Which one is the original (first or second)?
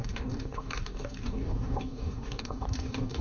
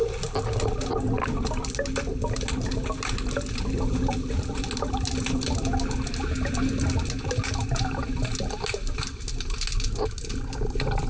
second